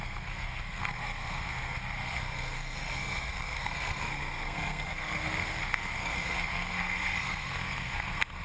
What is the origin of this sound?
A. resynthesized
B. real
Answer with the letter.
A